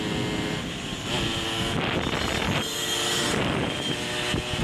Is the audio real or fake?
real